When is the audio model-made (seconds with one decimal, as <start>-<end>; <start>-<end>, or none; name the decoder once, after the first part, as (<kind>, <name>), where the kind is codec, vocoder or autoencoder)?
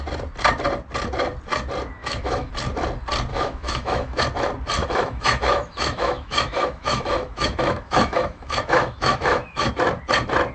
2.0-2.5 (autoencoder, DAC-VAE); 3.3-4.2; 4.8-9.7